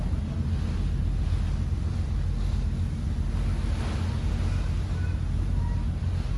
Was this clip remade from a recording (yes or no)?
no